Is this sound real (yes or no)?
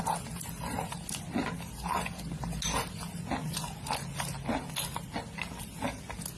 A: yes